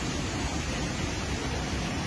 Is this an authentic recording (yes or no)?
no